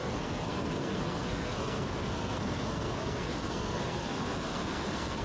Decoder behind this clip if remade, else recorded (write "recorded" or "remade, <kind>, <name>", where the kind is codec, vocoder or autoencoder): remade, codec, SNAC